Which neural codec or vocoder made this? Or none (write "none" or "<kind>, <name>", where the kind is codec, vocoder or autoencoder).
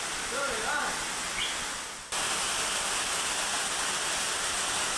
none